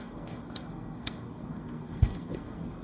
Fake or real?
fake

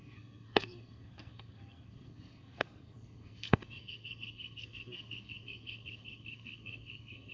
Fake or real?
fake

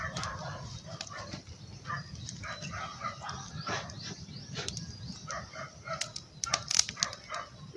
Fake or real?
real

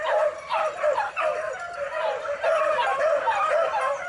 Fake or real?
real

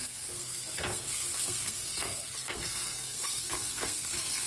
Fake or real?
fake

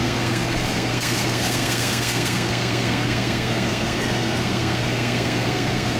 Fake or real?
fake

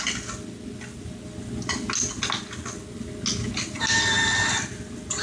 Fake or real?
real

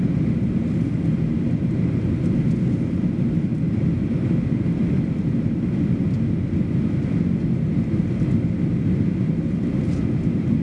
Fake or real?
real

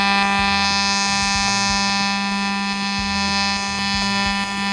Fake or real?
real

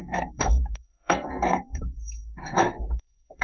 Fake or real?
fake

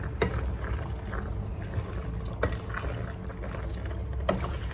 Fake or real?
real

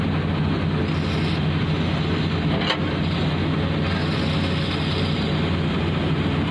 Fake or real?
real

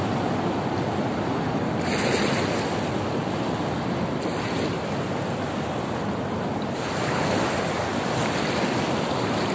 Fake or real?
real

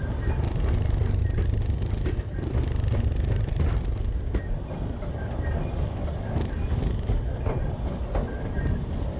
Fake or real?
real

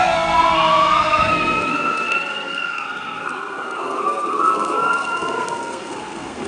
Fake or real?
fake